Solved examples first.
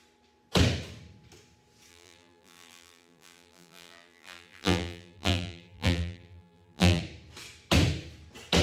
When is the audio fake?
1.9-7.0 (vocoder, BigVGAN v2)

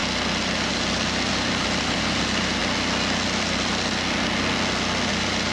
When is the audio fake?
0.0-2.6 (vocoder, BigVGAN v2); 5.1-5.5

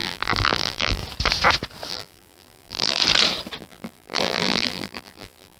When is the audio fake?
0.0-1.0 (vocoder, BigVGAN v2); 1.9-3.0; 3.6-5.6

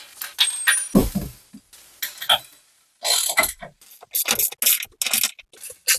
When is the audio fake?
none